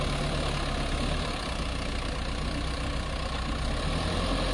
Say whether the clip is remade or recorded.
recorded